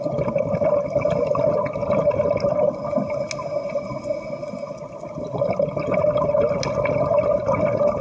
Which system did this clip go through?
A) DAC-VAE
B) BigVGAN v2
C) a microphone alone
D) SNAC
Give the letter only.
C